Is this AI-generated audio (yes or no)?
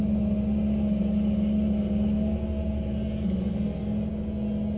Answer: no